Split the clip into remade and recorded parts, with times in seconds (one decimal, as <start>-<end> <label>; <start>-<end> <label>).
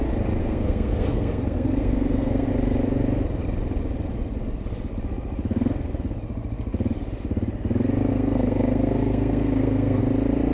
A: 0.0-0.4 recorded; 0.4-2.5 remade; 2.5-8.1 recorded; 8.1-10.0 remade; 10.0-10.5 recorded